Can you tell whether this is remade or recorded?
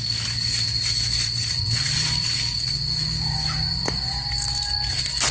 recorded